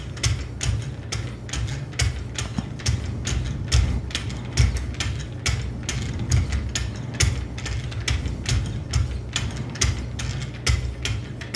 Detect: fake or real real